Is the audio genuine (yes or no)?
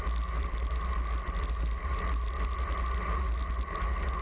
yes